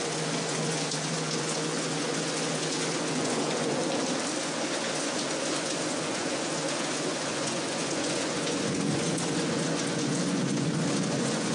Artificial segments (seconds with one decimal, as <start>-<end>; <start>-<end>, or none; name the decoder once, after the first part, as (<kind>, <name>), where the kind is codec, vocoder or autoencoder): 0.0-3.8 (vocoder, Vocos); 4.4-11.5